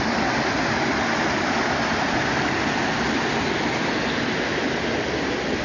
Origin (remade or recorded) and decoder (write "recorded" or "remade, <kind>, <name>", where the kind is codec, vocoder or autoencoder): recorded